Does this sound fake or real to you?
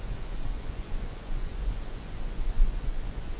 fake